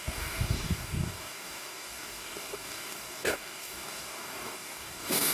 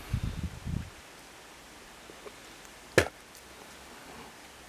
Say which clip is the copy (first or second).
first